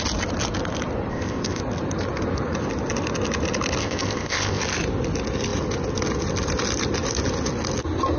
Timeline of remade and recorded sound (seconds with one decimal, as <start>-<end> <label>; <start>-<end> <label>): 0.0-1.1 recorded; 1.1-1.6 remade; 1.6-3.8 recorded; 3.8-4.6 remade; 4.6-8.2 recorded